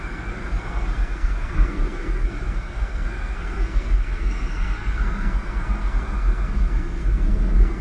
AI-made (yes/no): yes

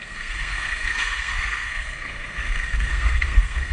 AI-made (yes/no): yes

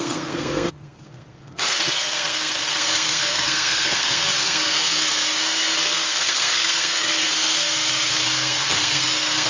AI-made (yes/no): yes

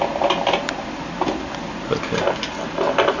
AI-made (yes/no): no